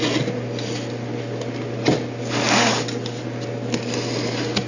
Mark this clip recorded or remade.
recorded